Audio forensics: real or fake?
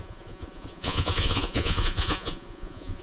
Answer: fake